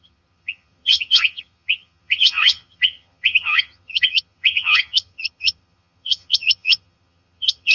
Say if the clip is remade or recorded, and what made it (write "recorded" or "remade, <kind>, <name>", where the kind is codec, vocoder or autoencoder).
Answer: remade, vocoder, HiFi-GAN